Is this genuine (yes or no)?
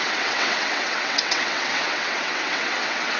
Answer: no